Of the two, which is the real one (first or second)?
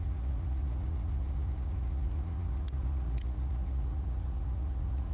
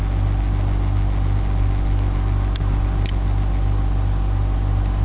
second